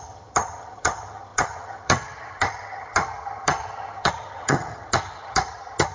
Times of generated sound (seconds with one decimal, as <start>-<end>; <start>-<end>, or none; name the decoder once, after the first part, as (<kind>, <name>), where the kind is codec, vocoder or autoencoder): 0.0-5.9 (vocoder, HiFi-GAN)